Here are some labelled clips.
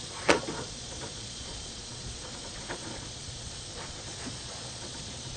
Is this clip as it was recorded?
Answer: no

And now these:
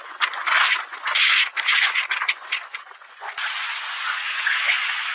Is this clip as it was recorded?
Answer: no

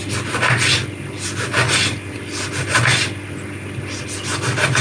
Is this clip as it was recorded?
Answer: yes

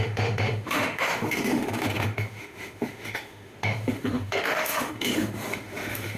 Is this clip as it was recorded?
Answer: no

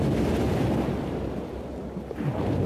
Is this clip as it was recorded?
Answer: yes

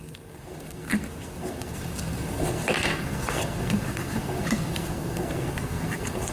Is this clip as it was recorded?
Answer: no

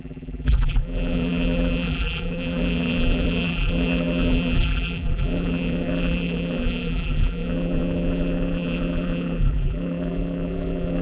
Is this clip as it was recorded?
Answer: no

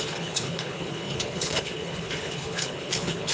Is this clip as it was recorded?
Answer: no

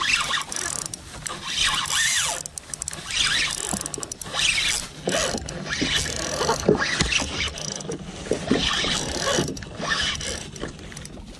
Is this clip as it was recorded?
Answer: yes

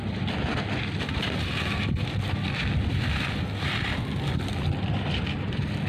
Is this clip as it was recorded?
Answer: yes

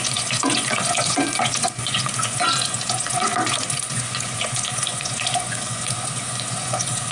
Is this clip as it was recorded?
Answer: no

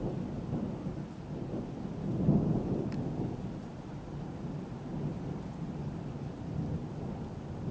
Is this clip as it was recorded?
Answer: yes